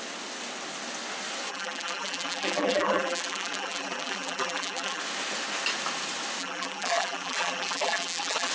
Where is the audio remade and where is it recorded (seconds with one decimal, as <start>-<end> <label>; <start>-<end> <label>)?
0.0-1.5 recorded; 1.5-5.0 remade; 5.0-6.4 recorded; 6.4-8.5 remade